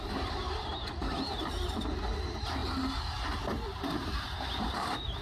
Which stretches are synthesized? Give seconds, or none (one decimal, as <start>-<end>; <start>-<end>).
0.0-2.6; 3.4-5.2